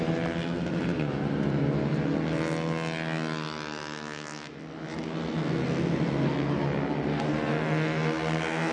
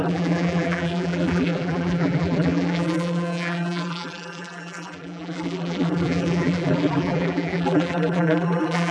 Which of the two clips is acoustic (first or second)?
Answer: first